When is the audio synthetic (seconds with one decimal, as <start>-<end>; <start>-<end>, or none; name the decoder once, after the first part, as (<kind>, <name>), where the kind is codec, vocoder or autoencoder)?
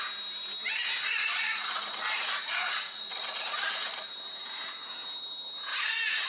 1.0-4.1 (vocoder, Vocos); 5.7-6.3